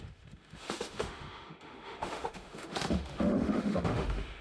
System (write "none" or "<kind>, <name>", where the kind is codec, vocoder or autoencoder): autoencoder, DAC-VAE